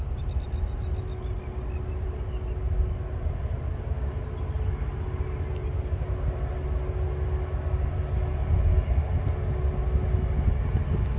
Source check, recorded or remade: recorded